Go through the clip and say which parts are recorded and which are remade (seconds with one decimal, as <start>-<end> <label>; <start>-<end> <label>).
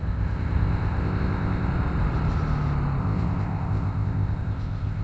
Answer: 0.0-1.7 remade; 1.7-3.0 recorded; 3.0-5.0 remade